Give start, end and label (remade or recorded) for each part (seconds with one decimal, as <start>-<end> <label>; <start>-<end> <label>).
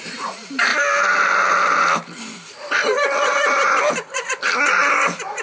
0.0-5.4 recorded